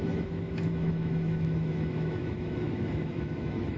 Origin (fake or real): fake